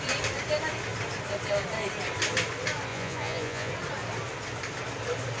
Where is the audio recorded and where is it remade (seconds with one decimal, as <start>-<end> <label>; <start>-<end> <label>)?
0.0-2.9 recorded; 2.9-3.7 remade; 3.7-5.4 recorded